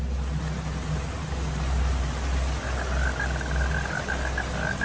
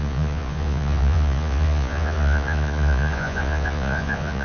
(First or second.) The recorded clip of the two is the first